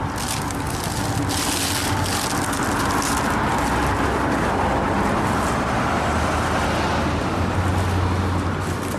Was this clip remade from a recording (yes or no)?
no